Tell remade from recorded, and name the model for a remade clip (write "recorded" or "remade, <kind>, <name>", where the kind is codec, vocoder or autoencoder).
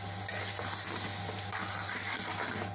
recorded